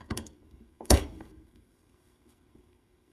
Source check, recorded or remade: remade